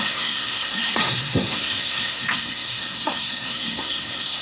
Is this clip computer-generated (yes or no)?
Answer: yes